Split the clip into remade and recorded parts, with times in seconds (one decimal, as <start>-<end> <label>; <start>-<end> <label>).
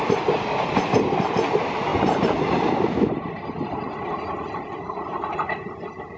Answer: 0.0-6.2 recorded